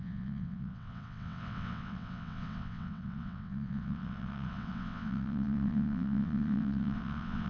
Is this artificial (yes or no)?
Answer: yes